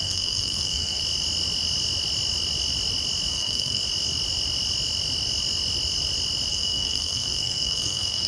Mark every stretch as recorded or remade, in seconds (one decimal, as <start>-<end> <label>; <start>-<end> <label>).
0.0-1.0 remade; 1.0-3.3 recorded; 3.3-3.8 remade; 3.8-6.5 recorded; 6.5-8.3 remade